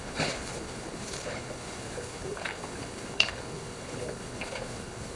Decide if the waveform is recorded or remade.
remade